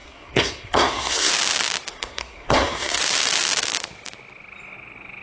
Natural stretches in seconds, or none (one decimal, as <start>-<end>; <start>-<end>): 1.3-1.9; 3.0-5.2